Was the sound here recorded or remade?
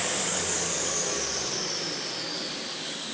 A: remade